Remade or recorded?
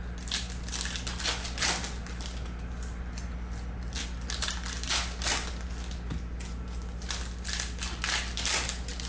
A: recorded